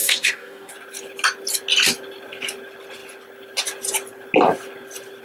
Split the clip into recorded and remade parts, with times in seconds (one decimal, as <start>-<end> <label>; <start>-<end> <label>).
0.0-0.7 remade; 0.7-5.2 recorded